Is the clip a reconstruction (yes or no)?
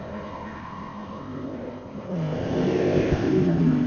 yes